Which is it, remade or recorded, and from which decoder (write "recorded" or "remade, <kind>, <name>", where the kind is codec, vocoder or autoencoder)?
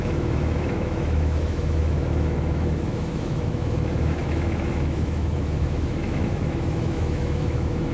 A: remade, autoencoder, DAC-VAE